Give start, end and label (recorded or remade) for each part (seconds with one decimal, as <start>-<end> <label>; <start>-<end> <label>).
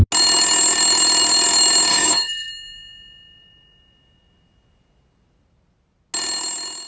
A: 0.0-1.9 recorded; 1.9-2.5 remade; 2.5-6.9 recorded